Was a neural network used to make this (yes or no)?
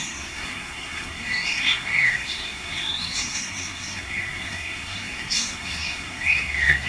yes